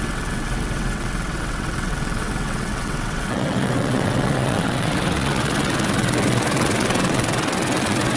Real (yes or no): no